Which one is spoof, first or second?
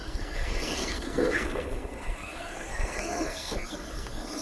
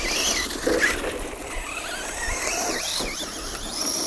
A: first